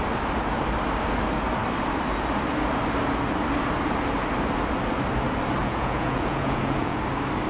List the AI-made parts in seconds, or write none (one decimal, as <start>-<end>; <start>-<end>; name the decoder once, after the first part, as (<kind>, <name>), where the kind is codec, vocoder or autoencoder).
5.6-7.0 (vocoder, Vocos)